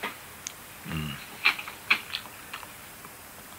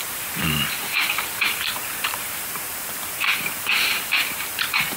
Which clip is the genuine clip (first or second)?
first